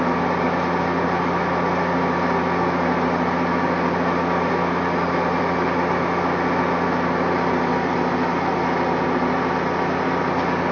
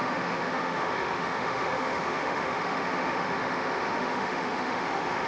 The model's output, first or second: second